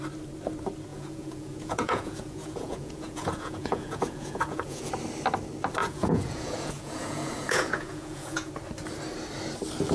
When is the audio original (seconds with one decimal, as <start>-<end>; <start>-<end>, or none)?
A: 0.0-0.9; 4.9-5.8; 8.5-9.9